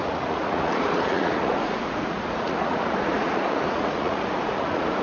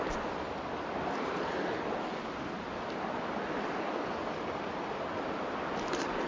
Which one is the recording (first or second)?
second